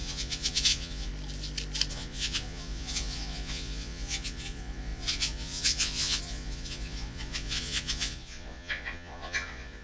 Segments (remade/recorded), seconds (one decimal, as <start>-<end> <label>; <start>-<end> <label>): 0.0-1.1 remade; 1.1-1.9 recorded; 1.9-9.8 remade